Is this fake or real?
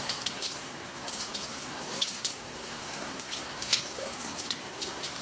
fake